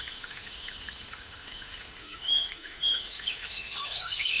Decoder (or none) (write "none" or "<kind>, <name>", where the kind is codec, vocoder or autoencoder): autoencoder, DAC-VAE